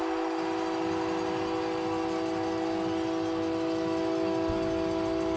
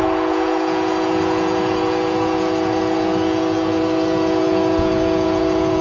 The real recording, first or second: first